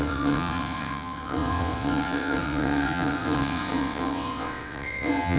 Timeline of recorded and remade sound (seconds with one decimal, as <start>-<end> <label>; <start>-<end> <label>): 0.0-5.4 remade

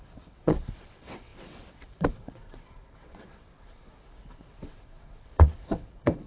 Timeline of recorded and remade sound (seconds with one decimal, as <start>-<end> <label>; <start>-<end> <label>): 0.0-6.3 remade